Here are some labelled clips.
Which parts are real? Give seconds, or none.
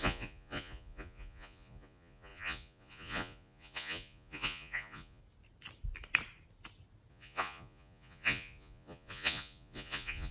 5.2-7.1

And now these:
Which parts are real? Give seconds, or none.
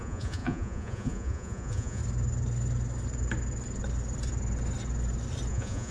2.0-5.5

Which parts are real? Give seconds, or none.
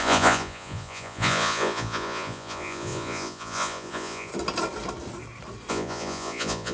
4.3-5.7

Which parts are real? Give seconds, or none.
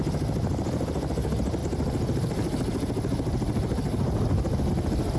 0.0-5.2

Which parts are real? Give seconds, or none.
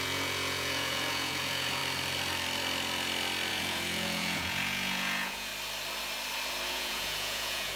1.8-3.5; 5.5-6.7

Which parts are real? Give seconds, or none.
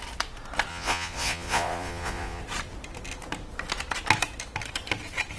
0.0-0.7; 2.4-5.4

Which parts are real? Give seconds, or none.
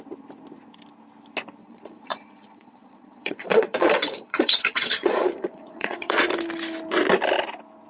0.0-1.6; 6.3-7.9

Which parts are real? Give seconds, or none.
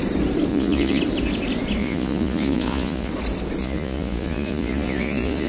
0.0-0.5; 1.0-1.8; 3.1-3.6